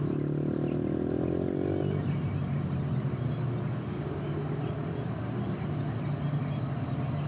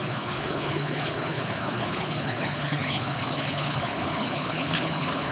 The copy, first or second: second